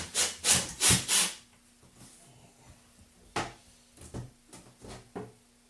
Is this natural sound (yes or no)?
yes